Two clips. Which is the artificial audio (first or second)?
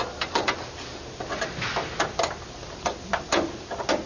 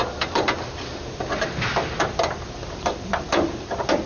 second